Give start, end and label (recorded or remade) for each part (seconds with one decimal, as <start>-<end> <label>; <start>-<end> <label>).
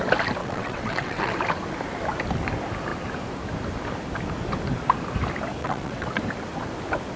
0.0-0.4 recorded; 0.4-1.3 remade; 1.3-5.6 recorded; 5.6-6.2 remade; 6.2-7.2 recorded